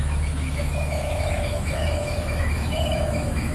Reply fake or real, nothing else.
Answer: fake